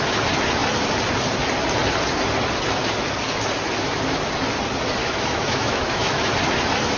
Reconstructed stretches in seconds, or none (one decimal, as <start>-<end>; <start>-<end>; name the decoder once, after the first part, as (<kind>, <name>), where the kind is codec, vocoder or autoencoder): 5.0-6.3 (autoencoder, DAC-VAE)